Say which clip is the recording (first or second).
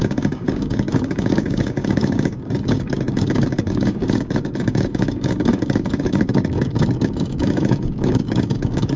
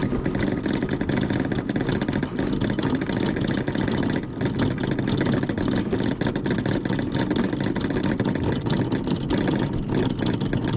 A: second